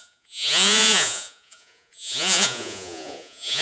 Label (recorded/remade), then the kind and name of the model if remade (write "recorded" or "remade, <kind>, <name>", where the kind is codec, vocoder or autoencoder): remade, vocoder, Vocos